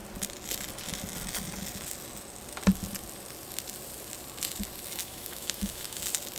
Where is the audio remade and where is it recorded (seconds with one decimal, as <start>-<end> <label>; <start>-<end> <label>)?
0.0-5.0 recorded; 5.0-6.0 remade; 6.0-6.4 recorded